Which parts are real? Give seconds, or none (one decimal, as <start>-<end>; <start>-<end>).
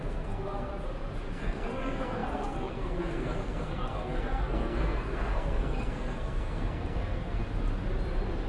0.7-1.3; 7.4-8.5